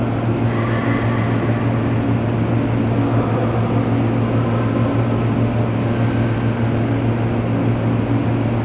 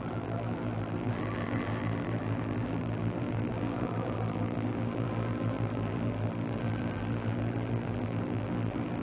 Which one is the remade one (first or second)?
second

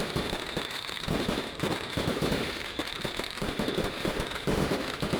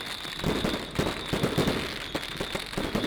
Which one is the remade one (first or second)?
first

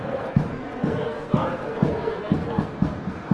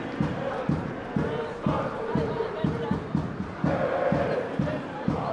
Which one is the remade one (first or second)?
first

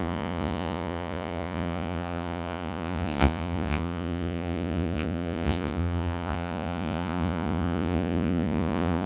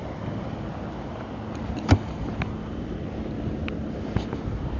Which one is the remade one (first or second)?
first